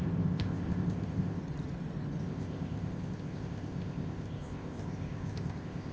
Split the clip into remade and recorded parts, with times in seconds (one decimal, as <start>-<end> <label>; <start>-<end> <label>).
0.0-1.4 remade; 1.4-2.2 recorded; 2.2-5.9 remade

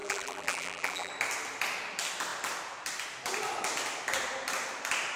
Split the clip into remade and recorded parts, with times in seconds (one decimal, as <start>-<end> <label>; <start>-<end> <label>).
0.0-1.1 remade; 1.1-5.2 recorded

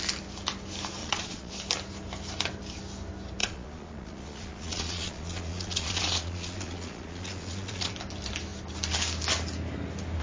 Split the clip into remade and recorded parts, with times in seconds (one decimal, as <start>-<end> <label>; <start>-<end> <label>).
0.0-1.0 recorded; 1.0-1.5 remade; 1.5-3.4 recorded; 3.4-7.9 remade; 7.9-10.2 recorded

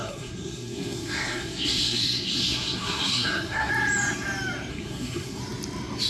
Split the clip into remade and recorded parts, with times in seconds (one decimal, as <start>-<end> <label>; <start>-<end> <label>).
0.0-3.7 remade; 3.7-4.7 recorded; 4.7-5.4 remade; 5.4-6.1 recorded

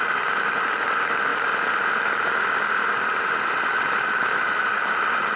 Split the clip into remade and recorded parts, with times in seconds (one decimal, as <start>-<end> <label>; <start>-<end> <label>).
0.0-5.4 recorded

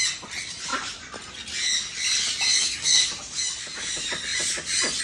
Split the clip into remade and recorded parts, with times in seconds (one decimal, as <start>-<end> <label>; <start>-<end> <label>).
0.0-2.6 recorded; 2.6-3.1 remade; 3.1-5.0 recorded